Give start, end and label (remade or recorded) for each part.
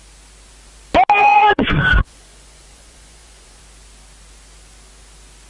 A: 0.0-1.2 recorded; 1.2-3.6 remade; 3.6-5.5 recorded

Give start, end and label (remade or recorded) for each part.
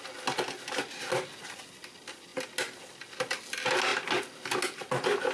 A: 0.0-5.3 recorded